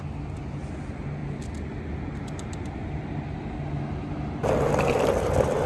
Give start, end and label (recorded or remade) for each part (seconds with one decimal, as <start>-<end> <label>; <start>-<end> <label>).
0.0-5.7 recorded